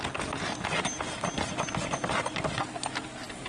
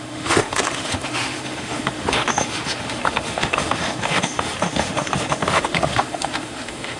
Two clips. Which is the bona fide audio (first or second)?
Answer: first